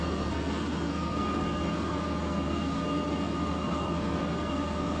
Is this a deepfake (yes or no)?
yes